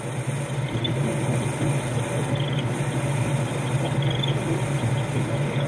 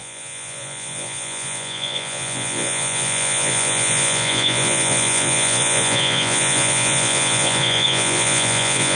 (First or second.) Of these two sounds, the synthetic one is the second